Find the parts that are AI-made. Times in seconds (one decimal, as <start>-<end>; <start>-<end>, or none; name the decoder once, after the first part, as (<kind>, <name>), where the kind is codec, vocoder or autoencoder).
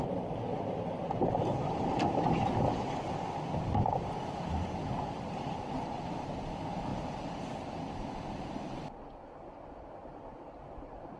6.9-7.4 (vocoder, BigVGAN v2); 10.0-11.2